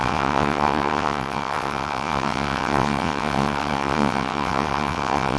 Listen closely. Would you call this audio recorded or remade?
remade